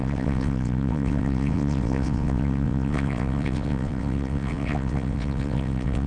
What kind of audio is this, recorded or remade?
remade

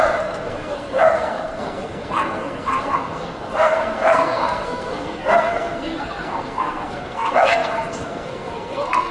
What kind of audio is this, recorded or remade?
remade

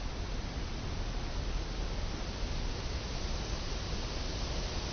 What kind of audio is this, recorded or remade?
recorded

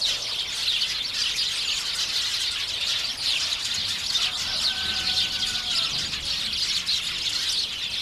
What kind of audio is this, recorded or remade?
recorded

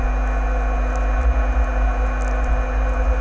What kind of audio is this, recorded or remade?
recorded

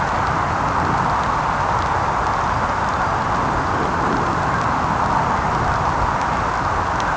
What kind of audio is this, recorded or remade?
recorded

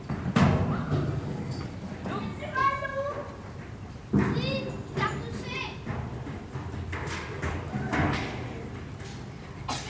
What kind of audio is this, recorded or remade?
recorded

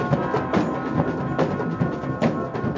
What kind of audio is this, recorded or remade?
recorded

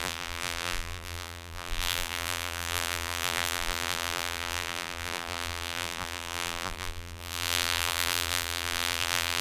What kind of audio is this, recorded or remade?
remade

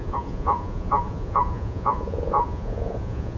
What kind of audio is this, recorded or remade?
remade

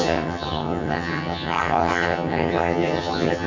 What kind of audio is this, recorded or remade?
remade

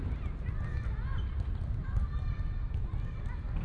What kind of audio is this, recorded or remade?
recorded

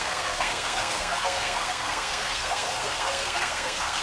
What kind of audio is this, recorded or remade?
remade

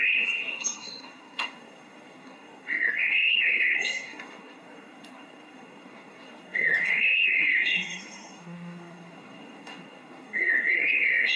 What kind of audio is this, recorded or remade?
remade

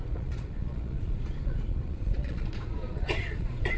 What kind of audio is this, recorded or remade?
remade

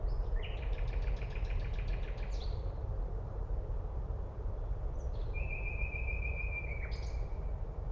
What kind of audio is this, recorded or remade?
recorded